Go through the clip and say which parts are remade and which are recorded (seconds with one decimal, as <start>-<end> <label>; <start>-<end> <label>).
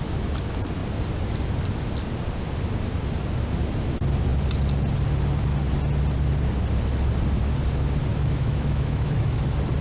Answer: 0.0-8.1 recorded; 8.1-9.4 remade; 9.4-9.8 recorded